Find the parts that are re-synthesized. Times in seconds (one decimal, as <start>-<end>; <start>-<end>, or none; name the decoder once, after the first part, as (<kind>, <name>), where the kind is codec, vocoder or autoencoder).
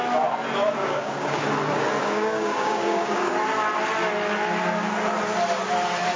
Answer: 0.8-1.4 (codec, DAC); 2.0-3.3